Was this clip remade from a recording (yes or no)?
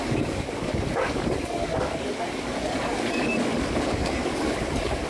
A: yes